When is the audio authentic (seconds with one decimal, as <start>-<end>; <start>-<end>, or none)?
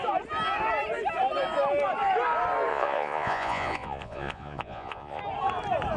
0.0-2.7; 5.2-6.0